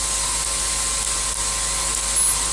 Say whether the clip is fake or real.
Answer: real